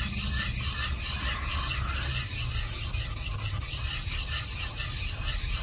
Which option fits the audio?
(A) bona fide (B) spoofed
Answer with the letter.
A